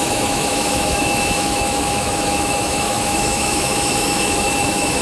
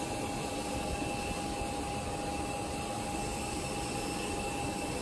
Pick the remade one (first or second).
first